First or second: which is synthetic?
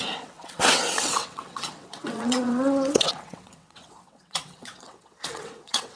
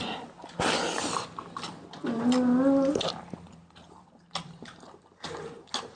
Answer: first